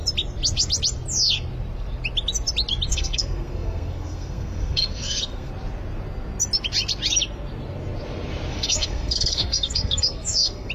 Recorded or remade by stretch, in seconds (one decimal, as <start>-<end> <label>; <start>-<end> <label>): 0.0-2.9 recorded; 2.9-5.5 remade; 5.5-8.5 recorded; 8.5-10.7 remade